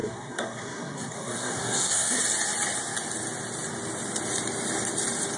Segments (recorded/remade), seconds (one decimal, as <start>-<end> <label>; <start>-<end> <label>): 0.0-2.2 remade; 2.2-5.4 recorded